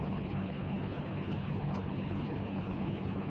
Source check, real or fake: fake